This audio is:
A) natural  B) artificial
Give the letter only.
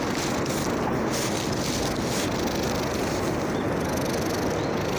A